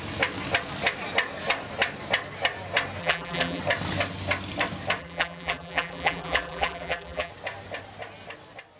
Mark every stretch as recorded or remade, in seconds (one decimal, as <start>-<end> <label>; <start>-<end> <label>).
0.0-3.0 recorded; 3.0-3.6 remade; 3.6-5.0 recorded; 5.0-7.3 remade; 7.3-8.8 recorded